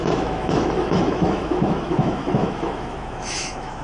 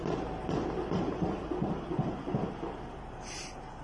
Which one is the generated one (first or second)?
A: first